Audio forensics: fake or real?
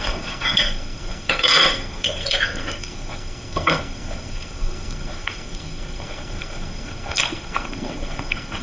fake